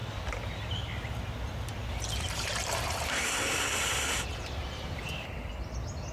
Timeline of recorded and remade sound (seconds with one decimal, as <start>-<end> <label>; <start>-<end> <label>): 0.0-0.7 remade; 0.7-1.8 recorded; 1.8-5.5 remade; 5.5-6.1 recorded